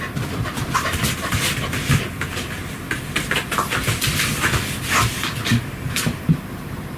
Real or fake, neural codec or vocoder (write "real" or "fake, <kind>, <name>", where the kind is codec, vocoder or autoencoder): fake, vocoder, BigVGAN v2